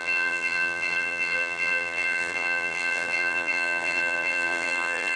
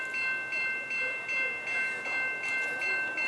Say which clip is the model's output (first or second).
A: first